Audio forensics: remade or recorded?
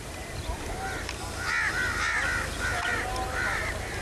recorded